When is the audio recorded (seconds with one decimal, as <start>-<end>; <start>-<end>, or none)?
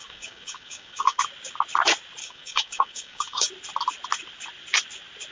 1.2-2.2; 3.5-5.3